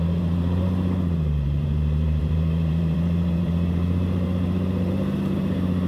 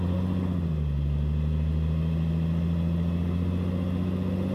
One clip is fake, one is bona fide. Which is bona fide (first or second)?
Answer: second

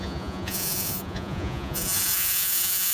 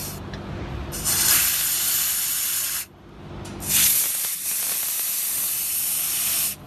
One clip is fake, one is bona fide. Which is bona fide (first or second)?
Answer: second